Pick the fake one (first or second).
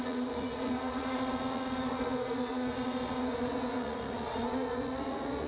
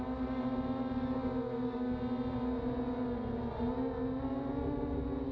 first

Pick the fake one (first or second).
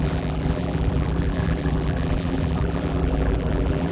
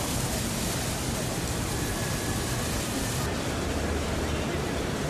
first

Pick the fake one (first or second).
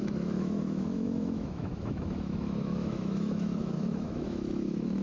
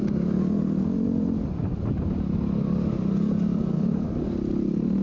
first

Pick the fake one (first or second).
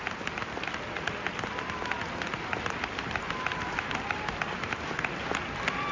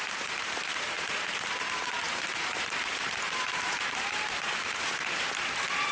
second